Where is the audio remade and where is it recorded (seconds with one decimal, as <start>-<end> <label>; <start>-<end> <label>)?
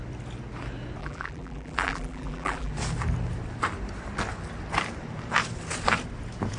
0.0-1.0 recorded; 1.0-2.7 remade; 2.7-6.6 recorded